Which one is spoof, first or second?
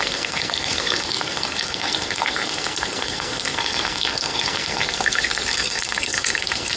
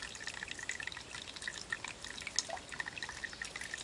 first